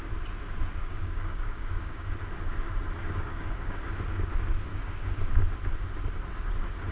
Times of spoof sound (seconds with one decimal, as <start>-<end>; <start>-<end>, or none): 0.8-2.2; 3.0-3.9; 4.7-5.3